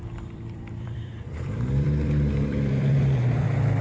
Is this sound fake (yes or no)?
yes